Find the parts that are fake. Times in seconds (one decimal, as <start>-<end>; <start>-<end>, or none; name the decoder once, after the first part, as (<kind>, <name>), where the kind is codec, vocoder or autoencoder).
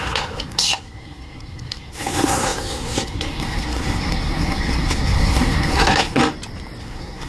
0.0-6.2 (codec, SNAC); 6.8-7.3